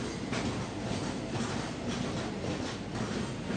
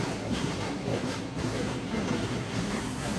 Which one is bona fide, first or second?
first